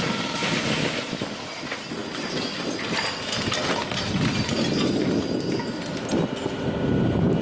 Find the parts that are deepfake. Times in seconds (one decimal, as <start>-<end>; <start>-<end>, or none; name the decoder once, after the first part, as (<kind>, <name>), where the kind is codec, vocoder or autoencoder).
none